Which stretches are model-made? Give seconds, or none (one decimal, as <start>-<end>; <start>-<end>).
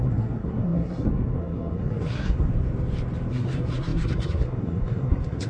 0.0-2.5; 3.3-5.5